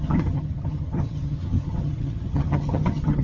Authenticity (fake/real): fake